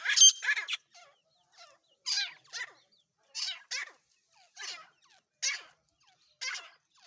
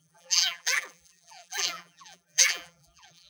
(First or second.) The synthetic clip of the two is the second